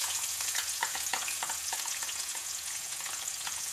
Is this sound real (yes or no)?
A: no